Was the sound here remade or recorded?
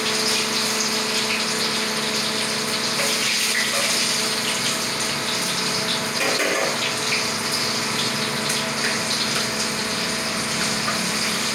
recorded